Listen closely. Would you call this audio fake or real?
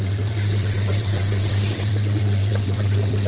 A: fake